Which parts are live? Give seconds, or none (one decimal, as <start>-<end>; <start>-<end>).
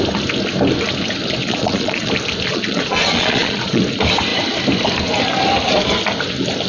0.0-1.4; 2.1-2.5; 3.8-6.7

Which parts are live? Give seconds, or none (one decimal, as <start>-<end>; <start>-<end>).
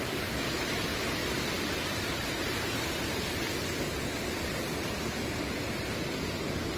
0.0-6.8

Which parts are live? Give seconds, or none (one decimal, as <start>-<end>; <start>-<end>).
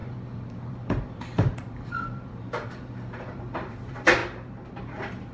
4.2-4.8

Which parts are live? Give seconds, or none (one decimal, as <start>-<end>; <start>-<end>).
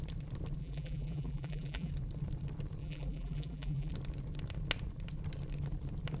0.0-0.6; 1.9-2.8; 3.9-6.2